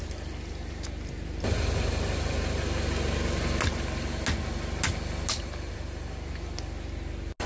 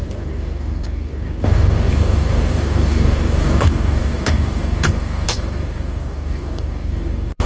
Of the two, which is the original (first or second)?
first